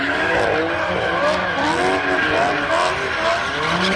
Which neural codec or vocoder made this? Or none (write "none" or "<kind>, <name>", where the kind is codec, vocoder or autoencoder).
none